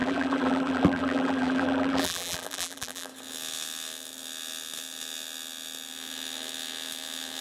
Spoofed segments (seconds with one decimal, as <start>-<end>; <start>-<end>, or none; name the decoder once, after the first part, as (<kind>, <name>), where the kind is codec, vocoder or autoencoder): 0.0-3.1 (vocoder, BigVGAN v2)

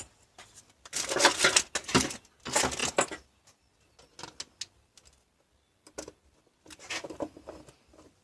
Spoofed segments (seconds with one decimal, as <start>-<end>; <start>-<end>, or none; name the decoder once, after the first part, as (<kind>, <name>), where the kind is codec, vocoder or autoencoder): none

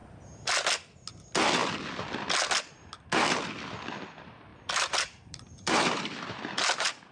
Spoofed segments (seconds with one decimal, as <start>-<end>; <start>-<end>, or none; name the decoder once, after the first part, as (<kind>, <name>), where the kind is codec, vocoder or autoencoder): 4.5-7.1 (vocoder, BigVGAN v2)

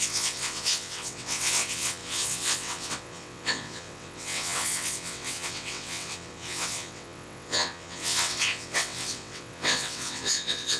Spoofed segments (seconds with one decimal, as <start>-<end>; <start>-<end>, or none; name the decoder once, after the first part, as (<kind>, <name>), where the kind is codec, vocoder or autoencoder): 0.0-10.8 (vocoder, WaveNeXt)

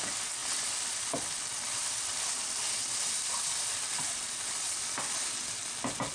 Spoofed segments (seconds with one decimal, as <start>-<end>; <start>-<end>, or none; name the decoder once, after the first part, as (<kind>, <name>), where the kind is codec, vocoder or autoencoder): 0.4-4.1 (vocoder, BigVGAN v2)